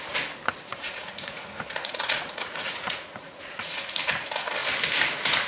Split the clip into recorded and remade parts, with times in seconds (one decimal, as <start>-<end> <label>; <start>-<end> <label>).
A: 0.0-0.7 recorded; 0.7-4.0 remade; 4.0-5.5 recorded